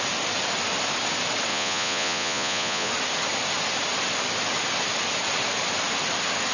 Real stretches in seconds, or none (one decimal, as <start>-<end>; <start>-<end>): 0.0-1.5; 2.9-6.5

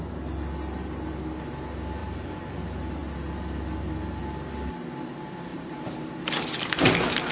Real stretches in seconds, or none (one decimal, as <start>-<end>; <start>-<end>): 0.0-2.0; 2.5-5.5; 6.0-7.3